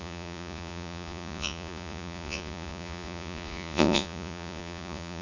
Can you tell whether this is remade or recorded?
remade